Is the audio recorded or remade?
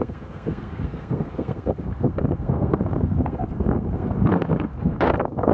remade